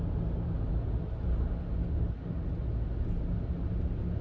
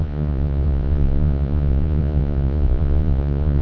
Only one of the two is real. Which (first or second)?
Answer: first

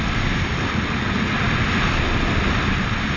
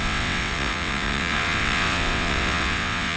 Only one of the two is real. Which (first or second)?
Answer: first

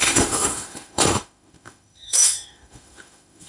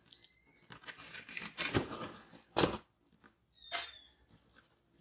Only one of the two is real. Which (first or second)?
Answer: second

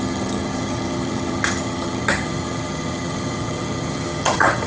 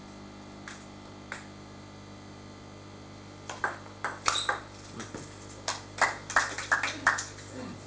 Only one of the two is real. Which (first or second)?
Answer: second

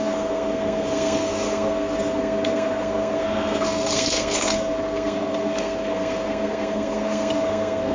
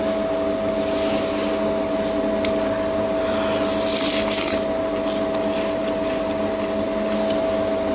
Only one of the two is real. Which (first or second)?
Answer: second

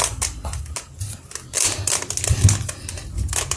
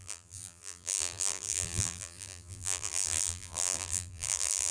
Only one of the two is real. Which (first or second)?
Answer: first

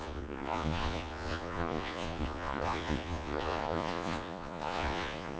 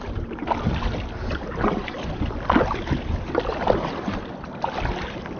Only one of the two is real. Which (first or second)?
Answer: second